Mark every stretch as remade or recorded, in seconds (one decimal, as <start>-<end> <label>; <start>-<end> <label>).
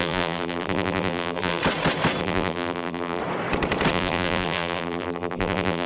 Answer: 0.0-1.6 remade; 1.6-2.2 recorded; 2.2-3.2 remade; 3.2-3.9 recorded; 3.9-5.9 remade